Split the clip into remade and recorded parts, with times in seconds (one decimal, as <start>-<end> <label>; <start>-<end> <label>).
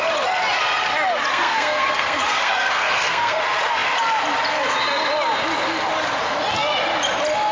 0.0-1.3 recorded; 1.3-3.4 remade; 3.4-7.5 recorded